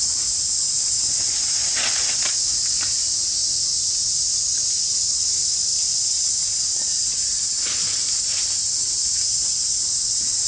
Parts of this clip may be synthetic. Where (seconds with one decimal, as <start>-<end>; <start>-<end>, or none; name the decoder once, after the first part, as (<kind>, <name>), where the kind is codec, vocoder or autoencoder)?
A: none

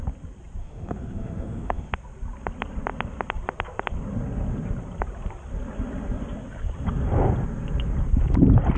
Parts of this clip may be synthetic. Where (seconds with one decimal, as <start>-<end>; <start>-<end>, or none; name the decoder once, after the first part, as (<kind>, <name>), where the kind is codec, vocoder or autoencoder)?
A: 0.6-1.9 (autoencoder, DAC-VAE)

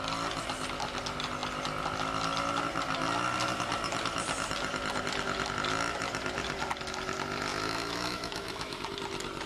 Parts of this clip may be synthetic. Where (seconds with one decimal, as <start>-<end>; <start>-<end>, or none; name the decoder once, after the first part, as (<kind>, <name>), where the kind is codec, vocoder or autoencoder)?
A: 7.5-8.8 (autoencoder, DAC-VAE)

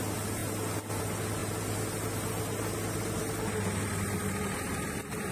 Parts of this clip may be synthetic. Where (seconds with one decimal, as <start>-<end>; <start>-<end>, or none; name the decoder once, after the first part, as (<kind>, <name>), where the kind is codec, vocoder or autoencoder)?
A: none